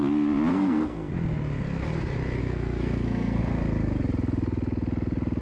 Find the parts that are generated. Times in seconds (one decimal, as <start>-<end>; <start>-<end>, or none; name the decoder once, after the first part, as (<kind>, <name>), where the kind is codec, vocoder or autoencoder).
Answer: 0.5-1.1 (codec, SNAC); 2.4-3.4